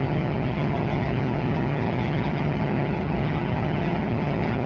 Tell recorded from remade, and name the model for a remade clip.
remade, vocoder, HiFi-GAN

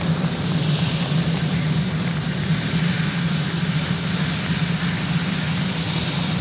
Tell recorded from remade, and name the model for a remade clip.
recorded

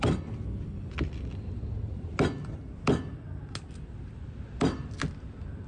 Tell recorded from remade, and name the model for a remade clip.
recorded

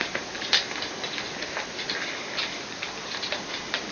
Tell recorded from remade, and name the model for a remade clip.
recorded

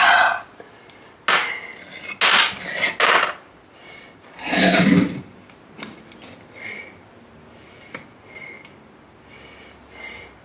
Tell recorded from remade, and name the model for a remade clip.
recorded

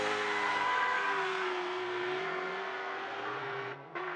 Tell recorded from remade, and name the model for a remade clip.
remade, codec, SNAC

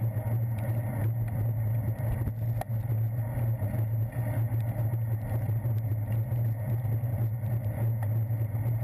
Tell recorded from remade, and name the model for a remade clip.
recorded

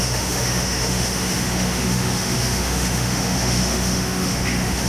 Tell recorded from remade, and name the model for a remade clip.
remade, autoencoder, DAC-VAE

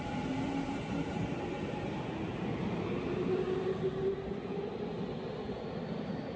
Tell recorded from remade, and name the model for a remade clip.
recorded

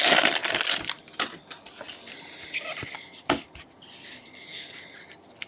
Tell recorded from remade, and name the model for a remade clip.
remade, vocoder, BigVGAN v2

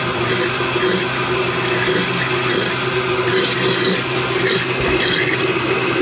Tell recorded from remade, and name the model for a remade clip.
recorded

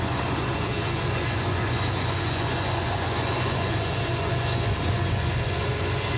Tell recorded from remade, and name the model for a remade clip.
remade, vocoder, Vocos